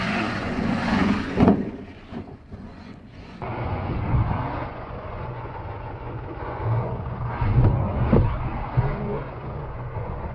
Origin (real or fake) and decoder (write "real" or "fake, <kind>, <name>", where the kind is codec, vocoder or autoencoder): fake, vocoder, Vocos